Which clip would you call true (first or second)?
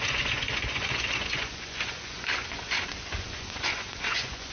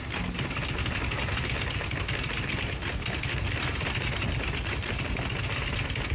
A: second